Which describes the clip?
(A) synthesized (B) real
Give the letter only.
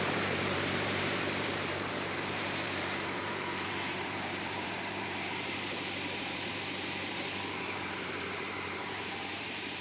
A